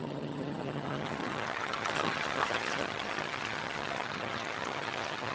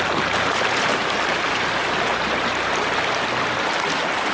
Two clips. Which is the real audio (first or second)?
second